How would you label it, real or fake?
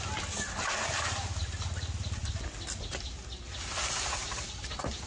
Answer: real